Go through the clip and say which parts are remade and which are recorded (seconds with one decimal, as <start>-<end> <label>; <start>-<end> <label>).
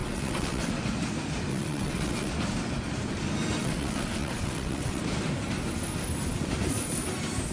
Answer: 0.0-0.7 remade; 0.7-1.5 recorded; 1.5-2.3 remade; 2.3-3.6 recorded; 3.6-5.0 remade; 5.0-7.5 recorded